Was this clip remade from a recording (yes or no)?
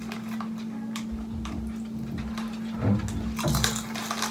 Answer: no